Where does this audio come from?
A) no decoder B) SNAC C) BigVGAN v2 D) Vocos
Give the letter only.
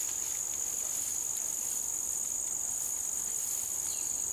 A